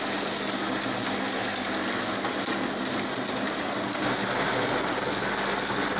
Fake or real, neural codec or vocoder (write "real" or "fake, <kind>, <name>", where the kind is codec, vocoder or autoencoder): real